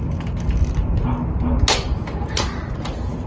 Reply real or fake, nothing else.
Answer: real